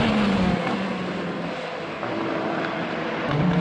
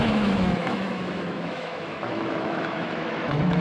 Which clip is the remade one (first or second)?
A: second